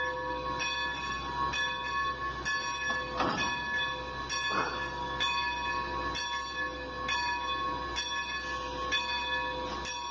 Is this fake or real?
real